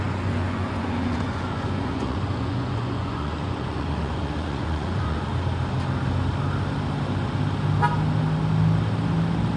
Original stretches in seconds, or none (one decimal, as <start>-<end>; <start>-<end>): 5.3-9.6